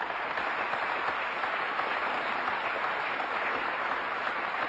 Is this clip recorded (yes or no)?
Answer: yes